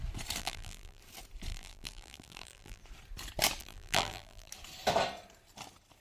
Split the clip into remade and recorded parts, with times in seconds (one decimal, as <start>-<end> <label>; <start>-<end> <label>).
0.0-0.4 recorded; 0.4-1.0 remade; 1.0-1.5 recorded; 1.5-2.8 remade; 2.8-3.6 recorded; 3.6-4.5 remade; 4.5-6.0 recorded